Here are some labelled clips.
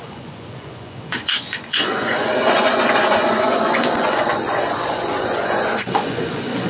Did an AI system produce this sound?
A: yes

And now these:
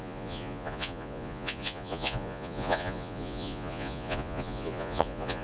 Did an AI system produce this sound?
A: yes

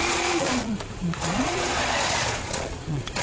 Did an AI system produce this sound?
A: yes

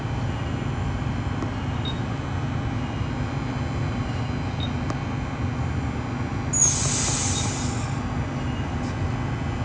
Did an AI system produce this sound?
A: no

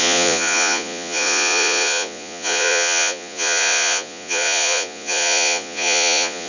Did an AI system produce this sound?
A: yes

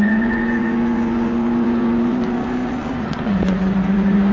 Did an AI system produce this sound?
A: yes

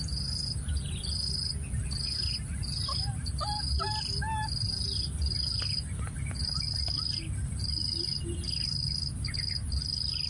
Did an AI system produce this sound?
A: no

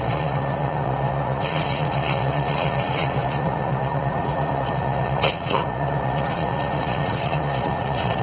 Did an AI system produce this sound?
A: yes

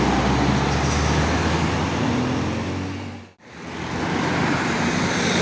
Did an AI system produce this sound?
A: no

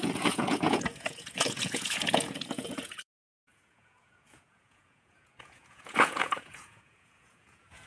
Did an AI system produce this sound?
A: yes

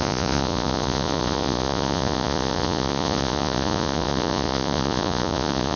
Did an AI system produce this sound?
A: yes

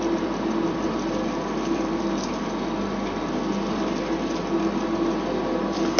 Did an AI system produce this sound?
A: no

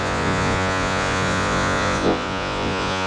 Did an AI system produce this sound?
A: yes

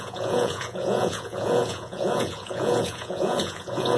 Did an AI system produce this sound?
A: yes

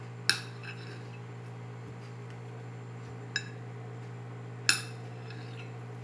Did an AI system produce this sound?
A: no